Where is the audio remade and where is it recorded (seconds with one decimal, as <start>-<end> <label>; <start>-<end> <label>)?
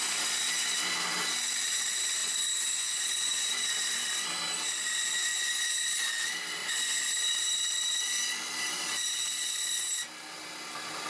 0.0-2.2 recorded; 2.2-3.5 remade; 3.5-5.3 recorded; 5.3-5.9 remade; 5.9-6.6 recorded; 6.6-7.1 remade; 7.1-11.1 recorded